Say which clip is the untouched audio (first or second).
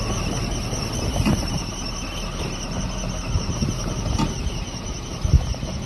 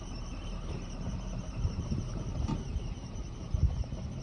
first